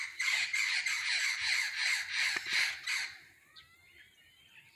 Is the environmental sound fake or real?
fake